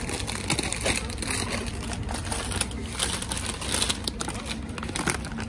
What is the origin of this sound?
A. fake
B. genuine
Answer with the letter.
B